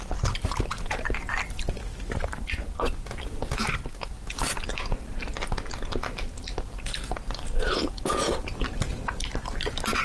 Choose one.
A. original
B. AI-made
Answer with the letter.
A